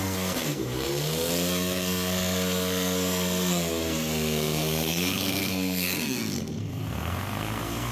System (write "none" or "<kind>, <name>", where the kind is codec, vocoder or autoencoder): codec, SNAC